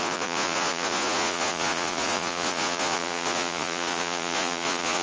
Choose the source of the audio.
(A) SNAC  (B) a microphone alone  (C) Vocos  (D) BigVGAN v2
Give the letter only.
C